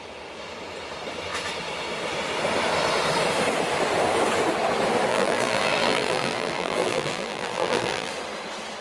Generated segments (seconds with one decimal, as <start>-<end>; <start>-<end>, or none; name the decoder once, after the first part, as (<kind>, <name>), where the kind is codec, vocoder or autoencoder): 5.1-8.1 (vocoder, BigVGAN v2)

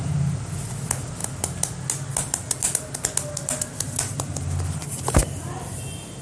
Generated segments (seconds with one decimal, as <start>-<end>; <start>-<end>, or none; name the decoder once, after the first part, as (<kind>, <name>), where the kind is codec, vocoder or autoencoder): none

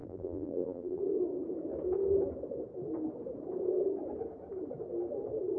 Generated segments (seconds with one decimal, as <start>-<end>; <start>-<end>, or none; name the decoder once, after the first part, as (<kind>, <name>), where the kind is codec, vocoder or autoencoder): 0.0-1.0 (vocoder, BigVGAN v2)

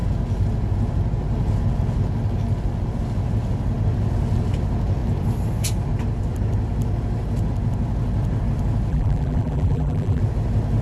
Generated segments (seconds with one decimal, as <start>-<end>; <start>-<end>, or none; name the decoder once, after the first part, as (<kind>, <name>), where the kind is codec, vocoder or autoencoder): 8.9-10.2 (vocoder, BigVGAN v2)

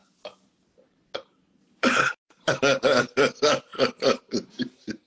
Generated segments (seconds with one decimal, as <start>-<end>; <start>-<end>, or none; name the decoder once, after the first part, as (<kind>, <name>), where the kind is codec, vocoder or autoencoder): 3.7-4.5 (vocoder, BigVGAN v2)